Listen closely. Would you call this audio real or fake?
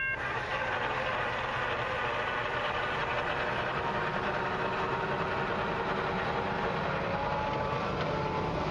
real